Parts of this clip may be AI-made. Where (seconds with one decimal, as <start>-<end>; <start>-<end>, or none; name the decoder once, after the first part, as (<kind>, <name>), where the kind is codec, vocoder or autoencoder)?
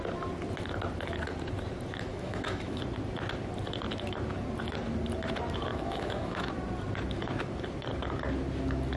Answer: 2.1-2.8 (autoencoder, DAC-VAE); 5.7-6.5